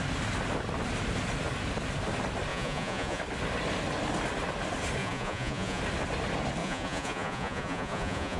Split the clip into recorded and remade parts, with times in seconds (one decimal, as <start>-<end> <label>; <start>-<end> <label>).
0.0-2.5 recorded; 2.5-3.2 remade; 3.2-5.0 recorded; 5.0-5.8 remade; 5.8-6.6 recorded; 6.6-8.4 remade